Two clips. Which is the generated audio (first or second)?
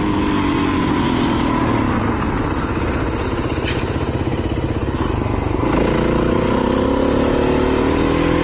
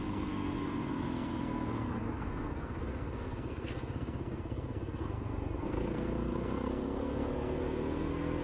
second